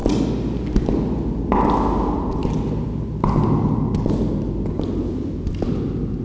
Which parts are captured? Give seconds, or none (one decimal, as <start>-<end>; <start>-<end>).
0.0-6.2